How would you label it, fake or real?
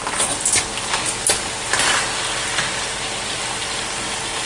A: real